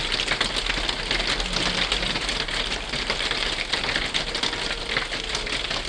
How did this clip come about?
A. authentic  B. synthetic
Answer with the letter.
A